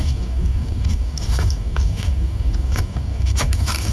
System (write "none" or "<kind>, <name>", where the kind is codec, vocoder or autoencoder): codec, DAC